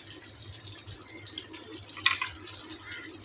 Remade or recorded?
recorded